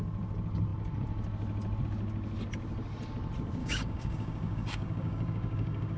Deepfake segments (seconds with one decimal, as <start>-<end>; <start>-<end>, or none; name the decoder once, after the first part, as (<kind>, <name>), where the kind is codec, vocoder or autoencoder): 3.6-6.0 (codec, DAC)

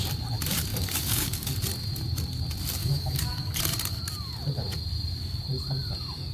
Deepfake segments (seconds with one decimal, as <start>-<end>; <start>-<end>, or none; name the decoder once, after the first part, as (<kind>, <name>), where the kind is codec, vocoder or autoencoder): 0.7-1.5 (codec, DAC); 2.8-3.6

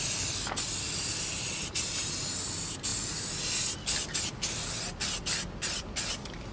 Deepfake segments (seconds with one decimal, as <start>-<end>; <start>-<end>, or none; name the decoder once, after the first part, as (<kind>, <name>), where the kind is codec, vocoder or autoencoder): none

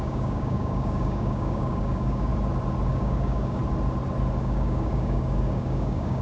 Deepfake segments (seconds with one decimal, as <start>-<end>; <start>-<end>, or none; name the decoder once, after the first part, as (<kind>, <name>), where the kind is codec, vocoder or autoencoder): 0.0-2.3 (codec, DAC); 2.9-3.6; 4.4-6.2

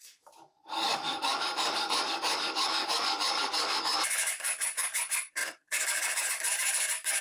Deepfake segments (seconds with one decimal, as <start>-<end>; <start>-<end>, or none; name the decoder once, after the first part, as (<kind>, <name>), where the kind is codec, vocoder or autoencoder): 0.0-7.2 (codec, DAC)

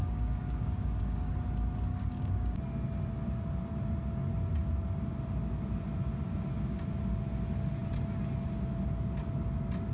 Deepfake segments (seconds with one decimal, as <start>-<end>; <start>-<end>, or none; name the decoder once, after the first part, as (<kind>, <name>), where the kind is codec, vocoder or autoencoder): 0.0-1.3 (codec, DAC); 1.9-2.6